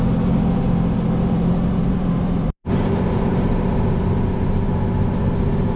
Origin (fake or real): fake